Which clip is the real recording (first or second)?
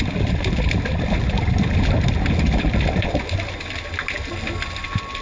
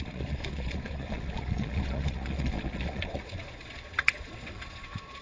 first